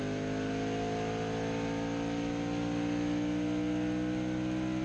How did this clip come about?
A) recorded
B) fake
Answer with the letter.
A